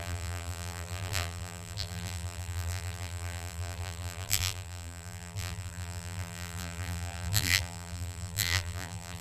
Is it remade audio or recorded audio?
remade